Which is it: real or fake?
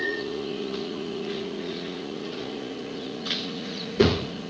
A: fake